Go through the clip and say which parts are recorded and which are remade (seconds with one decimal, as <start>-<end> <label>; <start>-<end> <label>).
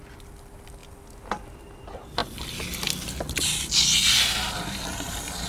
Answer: 0.0-5.5 recorded